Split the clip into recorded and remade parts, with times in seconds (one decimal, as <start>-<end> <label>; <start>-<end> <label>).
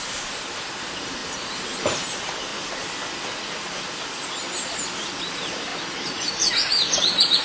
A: 0.0-1.2 remade; 1.2-1.8 recorded; 1.8-2.5 remade; 2.5-5.2 recorded; 5.2-7.4 remade